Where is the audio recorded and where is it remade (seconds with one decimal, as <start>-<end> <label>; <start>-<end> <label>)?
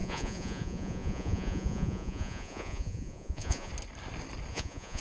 0.0-3.7 remade; 3.7-4.5 recorded; 4.5-5.0 remade